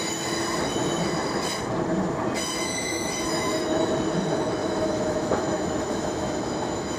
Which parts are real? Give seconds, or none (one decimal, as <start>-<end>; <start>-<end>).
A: 0.0-2.4; 3.9-4.6